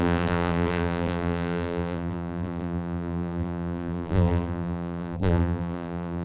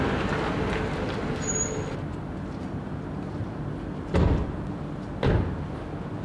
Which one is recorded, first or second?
second